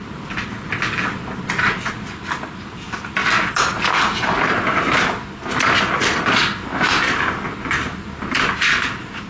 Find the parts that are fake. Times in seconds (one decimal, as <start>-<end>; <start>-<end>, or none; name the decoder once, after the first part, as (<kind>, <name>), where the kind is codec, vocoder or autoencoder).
6.6-7.2 (vocoder, BigVGAN v2)